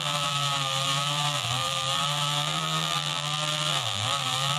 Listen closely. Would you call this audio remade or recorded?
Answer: remade